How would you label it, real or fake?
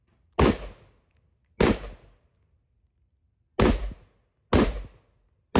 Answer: real